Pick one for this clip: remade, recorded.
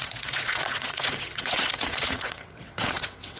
remade